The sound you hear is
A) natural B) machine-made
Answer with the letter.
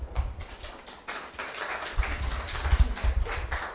A